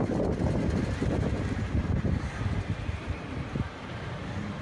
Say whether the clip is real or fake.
real